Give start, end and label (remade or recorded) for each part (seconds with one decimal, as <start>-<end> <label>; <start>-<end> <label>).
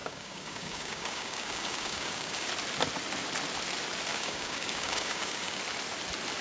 0.0-2.5 remade; 2.5-4.1 recorded; 4.1-5.6 remade; 5.6-6.4 recorded